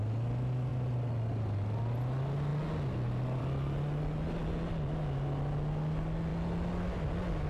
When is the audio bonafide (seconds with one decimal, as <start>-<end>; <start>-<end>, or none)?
0.0-7.5